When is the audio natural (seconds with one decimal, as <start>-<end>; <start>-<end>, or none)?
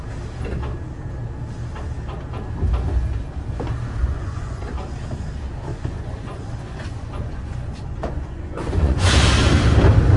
0.0-4.0; 4.7-5.7; 9.1-10.2